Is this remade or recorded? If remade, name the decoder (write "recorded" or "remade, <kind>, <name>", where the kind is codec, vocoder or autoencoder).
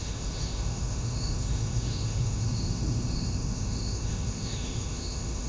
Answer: remade, autoencoder, DAC-VAE